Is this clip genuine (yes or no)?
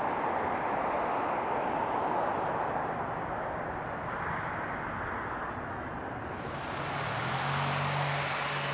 yes